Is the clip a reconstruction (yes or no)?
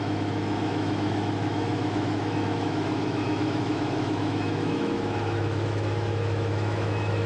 yes